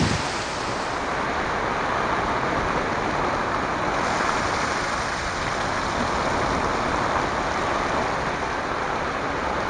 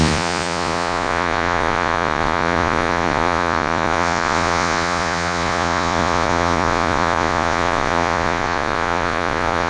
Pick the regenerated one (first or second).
second